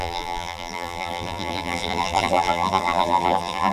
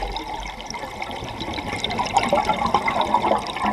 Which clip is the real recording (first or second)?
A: second